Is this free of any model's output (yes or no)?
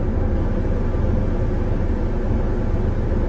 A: yes